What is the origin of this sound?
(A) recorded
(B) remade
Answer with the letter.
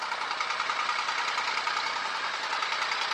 A